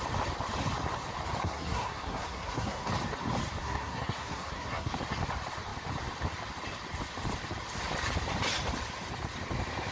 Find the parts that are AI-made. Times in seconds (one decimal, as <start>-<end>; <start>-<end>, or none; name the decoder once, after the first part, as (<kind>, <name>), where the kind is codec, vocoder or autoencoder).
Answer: 1.4-2.9 (codec, SNAC); 3.6-4.9